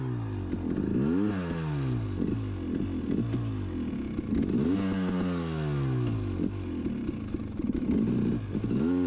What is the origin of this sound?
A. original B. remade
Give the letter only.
A